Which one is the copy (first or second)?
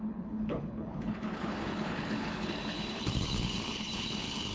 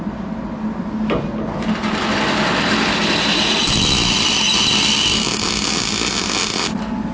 first